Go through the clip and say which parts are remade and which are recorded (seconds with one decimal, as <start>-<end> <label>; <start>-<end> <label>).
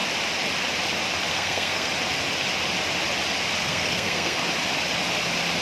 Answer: 0.0-1.3 recorded; 1.3-1.9 remade; 1.9-3.6 recorded; 3.6-4.4 remade; 4.4-5.6 recorded